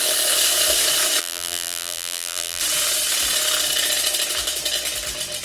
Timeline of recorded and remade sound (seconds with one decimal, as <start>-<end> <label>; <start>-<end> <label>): 0.0-1.2 recorded; 1.2-2.6 remade; 2.6-5.4 recorded